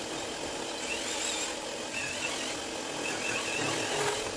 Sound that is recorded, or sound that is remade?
recorded